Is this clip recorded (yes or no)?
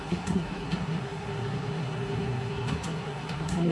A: no